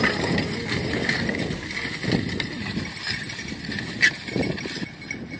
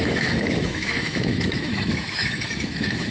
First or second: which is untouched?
first